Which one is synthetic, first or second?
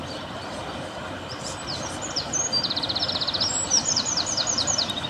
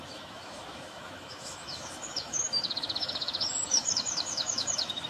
second